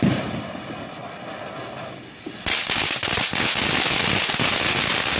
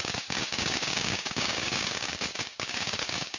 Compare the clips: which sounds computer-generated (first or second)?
second